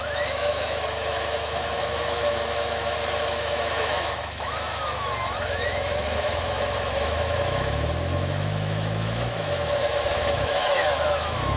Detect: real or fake fake